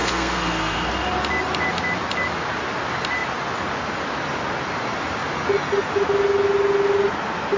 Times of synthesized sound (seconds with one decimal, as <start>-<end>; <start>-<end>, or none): 0.0-0.9